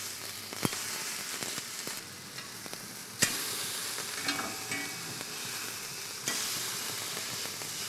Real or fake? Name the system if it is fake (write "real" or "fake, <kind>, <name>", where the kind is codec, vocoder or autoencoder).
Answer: real